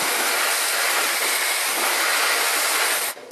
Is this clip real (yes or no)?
yes